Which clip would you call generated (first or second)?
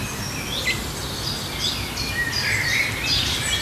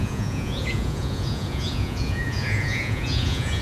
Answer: second